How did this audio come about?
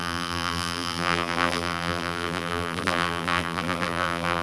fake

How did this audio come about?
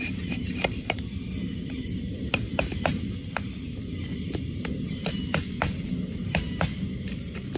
fake